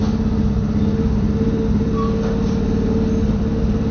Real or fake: real